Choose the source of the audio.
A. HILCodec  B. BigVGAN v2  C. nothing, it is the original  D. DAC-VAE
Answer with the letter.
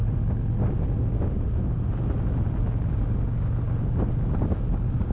C